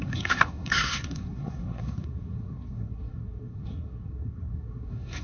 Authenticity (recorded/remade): remade